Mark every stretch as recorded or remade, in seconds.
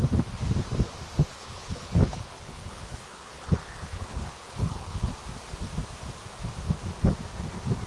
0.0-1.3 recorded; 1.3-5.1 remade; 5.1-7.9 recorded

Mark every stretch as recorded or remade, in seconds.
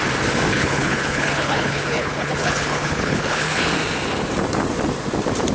0.0-0.5 recorded; 0.5-3.7 remade; 3.7-5.5 recorded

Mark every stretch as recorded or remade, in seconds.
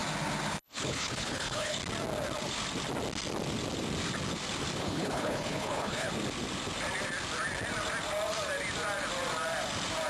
0.0-0.5 recorded; 0.5-1.8 remade; 1.8-4.8 recorded; 4.8-6.1 remade; 6.1-10.1 recorded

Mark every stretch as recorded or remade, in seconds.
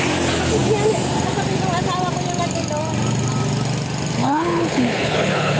0.0-4.2 recorded; 4.2-5.6 remade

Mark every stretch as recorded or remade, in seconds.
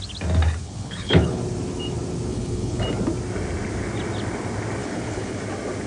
0.0-0.6 recorded; 0.6-1.4 remade; 1.4-2.3 recorded; 2.3-2.8 remade; 2.8-4.8 recorded; 4.8-5.4 remade; 5.4-5.9 recorded